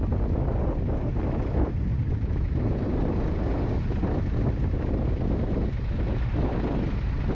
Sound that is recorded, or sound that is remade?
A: recorded